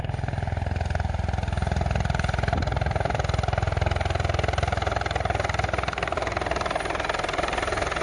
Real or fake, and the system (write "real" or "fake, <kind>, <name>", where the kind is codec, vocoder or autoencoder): real